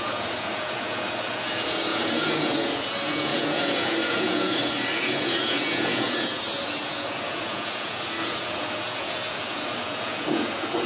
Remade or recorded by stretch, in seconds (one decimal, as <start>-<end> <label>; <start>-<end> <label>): 0.0-10.9 remade